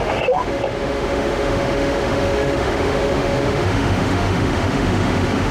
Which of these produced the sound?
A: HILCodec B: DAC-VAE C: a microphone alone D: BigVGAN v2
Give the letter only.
B